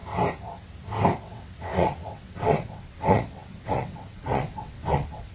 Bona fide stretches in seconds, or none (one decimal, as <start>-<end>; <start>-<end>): 0.0-1.2